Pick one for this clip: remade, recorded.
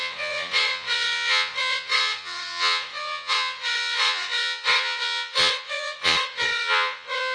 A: remade